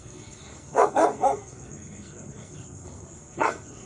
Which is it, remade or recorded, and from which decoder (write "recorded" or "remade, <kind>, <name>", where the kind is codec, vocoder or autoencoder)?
remade, codec, SNAC